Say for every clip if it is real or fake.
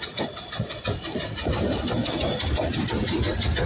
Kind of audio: real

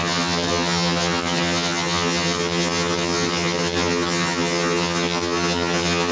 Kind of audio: fake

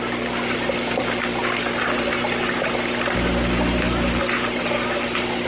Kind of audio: real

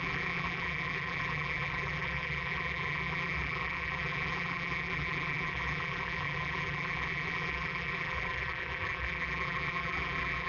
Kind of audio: fake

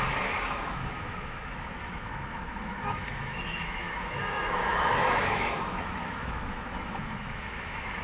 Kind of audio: fake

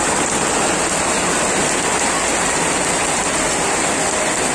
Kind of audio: real